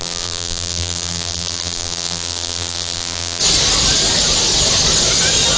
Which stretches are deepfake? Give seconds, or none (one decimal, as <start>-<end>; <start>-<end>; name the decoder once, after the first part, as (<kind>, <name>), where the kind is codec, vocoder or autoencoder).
0.0-3.4 (vocoder, BigVGAN v2)